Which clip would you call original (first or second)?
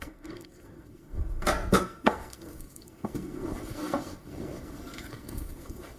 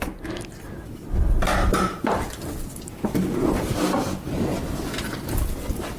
second